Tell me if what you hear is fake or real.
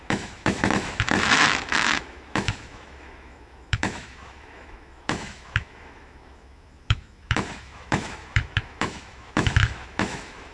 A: fake